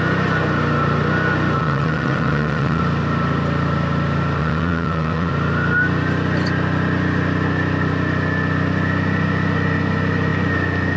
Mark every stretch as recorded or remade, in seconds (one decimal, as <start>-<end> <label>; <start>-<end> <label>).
0.0-1.6 recorded; 1.6-2.8 remade; 2.8-4.4 recorded; 4.4-5.3 remade; 5.3-11.0 recorded